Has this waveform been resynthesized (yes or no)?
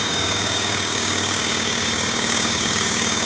yes